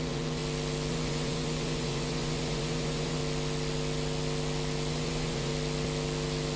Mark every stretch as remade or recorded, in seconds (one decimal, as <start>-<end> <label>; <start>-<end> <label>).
0.0-0.4 remade; 0.4-0.9 recorded; 0.9-3.2 remade; 3.2-4.9 recorded; 4.9-5.5 remade; 5.5-6.6 recorded